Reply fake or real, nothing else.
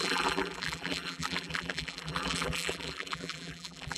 fake